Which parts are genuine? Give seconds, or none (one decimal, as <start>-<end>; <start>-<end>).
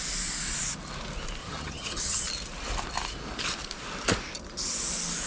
0.0-1.4; 2.2-5.3